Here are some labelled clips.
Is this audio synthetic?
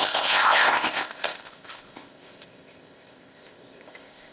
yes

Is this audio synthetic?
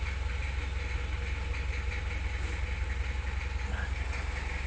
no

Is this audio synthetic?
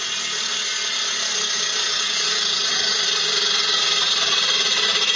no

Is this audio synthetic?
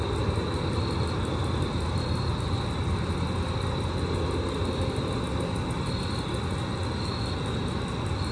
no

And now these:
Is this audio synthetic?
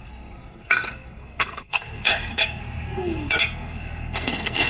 yes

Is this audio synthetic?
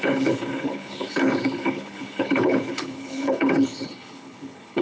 yes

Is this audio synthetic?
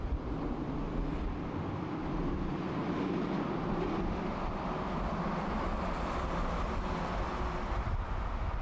no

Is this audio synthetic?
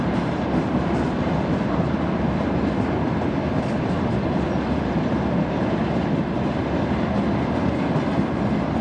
no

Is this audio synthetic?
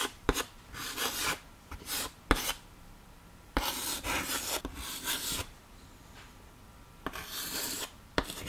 yes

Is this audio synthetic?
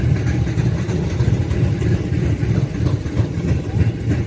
no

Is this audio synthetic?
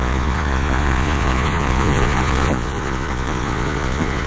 yes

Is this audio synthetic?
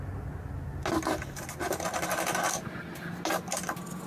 no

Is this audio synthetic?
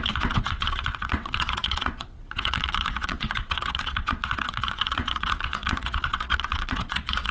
yes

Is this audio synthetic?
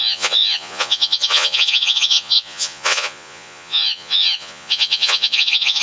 yes